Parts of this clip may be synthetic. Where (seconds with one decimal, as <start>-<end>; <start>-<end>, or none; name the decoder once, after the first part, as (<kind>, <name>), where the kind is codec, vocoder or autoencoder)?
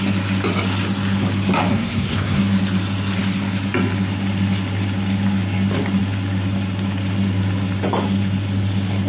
1.7-2.4 (codec, SNAC)